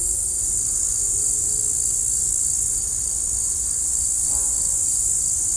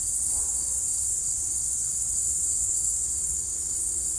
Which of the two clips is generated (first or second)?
second